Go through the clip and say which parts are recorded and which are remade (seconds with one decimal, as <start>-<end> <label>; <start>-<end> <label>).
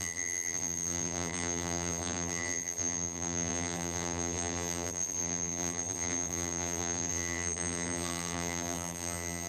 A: 0.0-9.5 remade